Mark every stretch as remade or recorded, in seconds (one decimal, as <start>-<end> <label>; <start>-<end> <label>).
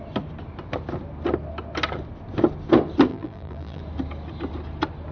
0.0-3.1 recorded; 3.1-3.8 remade; 3.8-5.1 recorded